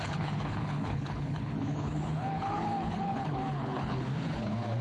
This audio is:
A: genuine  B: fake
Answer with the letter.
B